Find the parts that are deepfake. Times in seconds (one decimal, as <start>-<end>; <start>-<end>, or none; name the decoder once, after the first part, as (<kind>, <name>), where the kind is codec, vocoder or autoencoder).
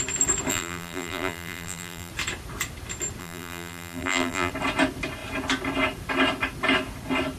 0.5-2.1 (vocoder, BigVGAN v2); 3.2-4.5